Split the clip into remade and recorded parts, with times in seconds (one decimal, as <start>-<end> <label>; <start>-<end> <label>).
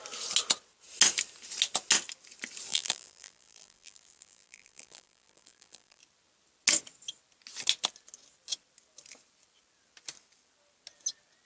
0.0-2.7 recorded; 2.7-6.0 remade; 6.0-11.5 recorded